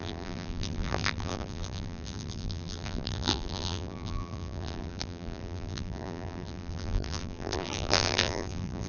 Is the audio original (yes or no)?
no